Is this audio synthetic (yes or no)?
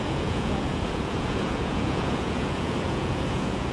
yes